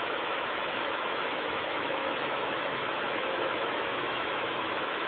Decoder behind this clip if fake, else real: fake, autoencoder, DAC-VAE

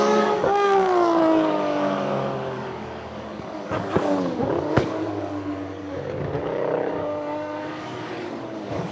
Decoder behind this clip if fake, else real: fake, codec, DAC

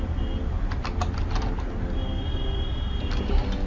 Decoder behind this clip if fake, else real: real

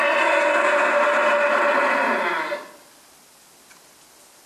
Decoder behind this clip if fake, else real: real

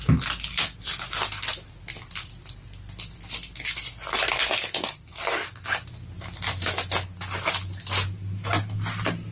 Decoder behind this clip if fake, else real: real